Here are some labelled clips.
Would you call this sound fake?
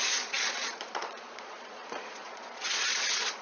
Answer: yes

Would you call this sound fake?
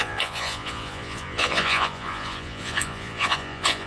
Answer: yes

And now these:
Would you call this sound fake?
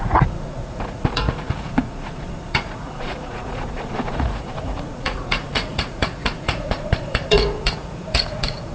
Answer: yes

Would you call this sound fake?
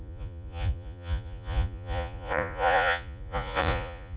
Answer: yes